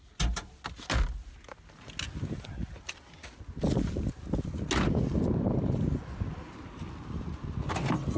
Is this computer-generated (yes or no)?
no